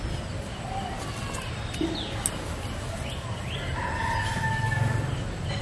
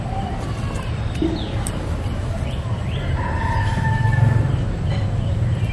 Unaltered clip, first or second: first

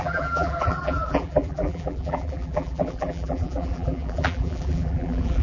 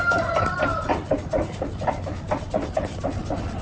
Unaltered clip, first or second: second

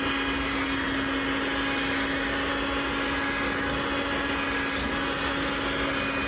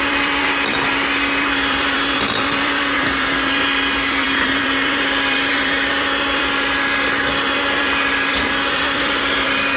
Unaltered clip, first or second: first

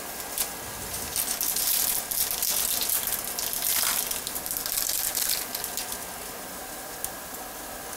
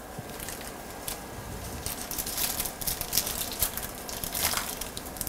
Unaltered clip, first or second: first